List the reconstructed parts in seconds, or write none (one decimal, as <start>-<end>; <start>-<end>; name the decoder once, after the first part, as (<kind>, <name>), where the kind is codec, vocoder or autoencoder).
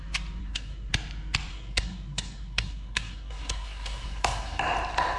0.4-0.9 (codec, SNAC); 1.5-4.6